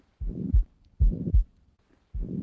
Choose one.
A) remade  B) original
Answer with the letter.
B